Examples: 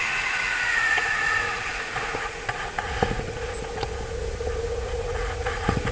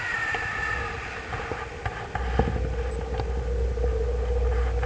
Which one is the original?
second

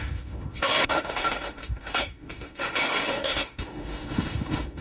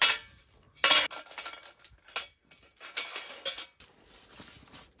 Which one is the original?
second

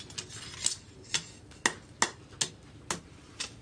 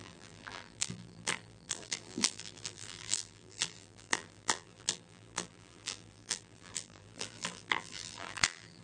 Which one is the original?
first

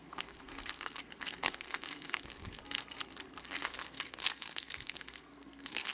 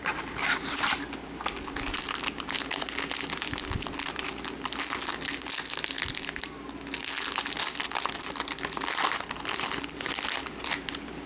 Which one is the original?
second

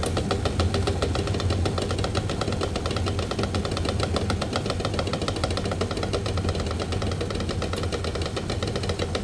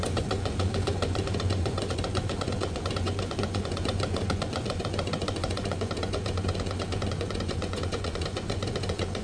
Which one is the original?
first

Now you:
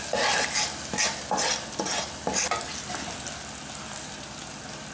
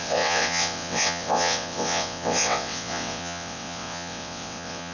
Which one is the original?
first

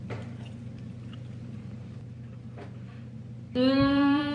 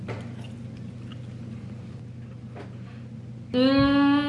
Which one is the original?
second